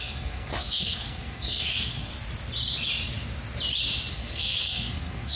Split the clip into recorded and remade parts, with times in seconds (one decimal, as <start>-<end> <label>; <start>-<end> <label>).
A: 0.0-2.1 remade; 2.1-4.1 recorded; 4.1-5.4 remade